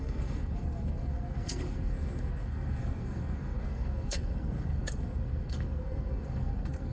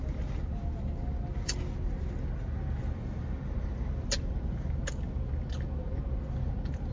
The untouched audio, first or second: second